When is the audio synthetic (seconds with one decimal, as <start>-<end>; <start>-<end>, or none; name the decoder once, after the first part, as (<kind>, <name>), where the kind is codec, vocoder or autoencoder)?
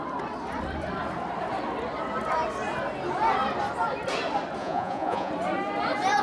4.6-5.3 (vocoder, Vocos)